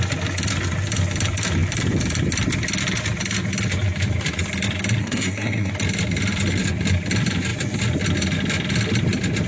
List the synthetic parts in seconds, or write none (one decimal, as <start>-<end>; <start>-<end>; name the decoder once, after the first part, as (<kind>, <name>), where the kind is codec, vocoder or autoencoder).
5.0-5.7 (codec, SNAC)